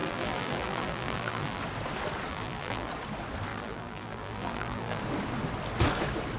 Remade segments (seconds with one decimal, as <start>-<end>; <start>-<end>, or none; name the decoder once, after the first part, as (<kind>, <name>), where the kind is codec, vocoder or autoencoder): 0.0-1.6 (vocoder, BigVGAN v2); 2.3-2.9; 3.5-5.0

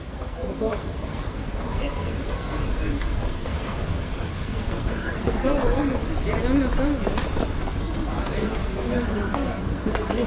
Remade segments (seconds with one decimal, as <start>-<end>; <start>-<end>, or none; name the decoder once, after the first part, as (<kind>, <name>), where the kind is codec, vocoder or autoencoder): 0.0-6.0 (codec, SNAC); 7.8-10.3

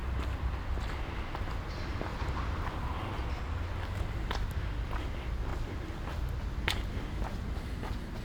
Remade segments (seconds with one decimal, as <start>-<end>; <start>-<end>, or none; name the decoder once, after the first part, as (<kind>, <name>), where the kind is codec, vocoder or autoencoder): 0.0-0.6 (vocoder, BigVGAN v2); 2.1-3.4; 5.5-6.4

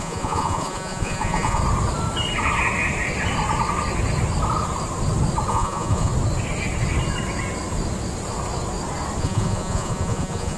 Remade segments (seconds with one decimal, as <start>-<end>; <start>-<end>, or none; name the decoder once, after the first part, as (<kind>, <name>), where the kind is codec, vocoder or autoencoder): 0.0-1.6 (vocoder, Vocos); 5.5-6.1; 9.2-10.6

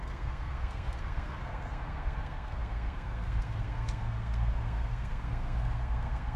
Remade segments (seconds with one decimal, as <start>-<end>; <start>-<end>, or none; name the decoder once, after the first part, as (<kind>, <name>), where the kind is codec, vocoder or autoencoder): 0.0-6.4 (codec, SNAC)

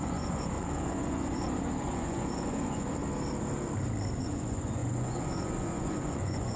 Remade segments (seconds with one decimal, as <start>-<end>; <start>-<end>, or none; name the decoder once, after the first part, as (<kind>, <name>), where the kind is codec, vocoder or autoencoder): 0.0-3.0 (vocoder, Vocos); 4.2-6.6

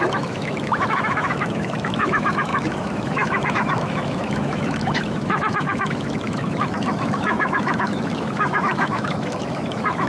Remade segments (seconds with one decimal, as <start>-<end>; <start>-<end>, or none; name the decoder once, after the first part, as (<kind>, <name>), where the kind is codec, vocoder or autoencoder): 0.0-10.1 (autoencoder, DAC-VAE)

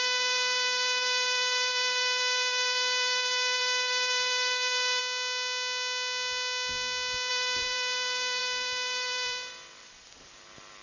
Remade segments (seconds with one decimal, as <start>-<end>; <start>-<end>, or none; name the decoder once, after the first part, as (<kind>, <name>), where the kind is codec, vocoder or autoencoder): 0.0-5.0 (vocoder, BigVGAN v2); 7.3-10.8